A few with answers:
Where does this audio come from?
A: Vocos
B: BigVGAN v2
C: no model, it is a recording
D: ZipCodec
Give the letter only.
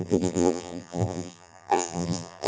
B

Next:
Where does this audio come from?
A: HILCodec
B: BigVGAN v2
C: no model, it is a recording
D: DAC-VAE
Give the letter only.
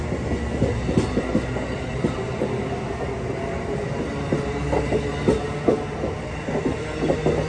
C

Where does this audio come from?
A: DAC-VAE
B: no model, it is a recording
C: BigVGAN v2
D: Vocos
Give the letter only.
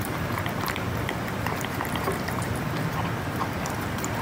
C